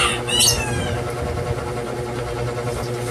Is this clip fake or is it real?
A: real